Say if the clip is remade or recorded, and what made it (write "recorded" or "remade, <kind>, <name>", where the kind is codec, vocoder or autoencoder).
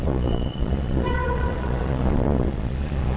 remade, vocoder, Vocos